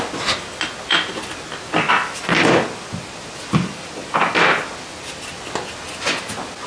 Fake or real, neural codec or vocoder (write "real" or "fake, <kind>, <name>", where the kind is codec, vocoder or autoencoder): real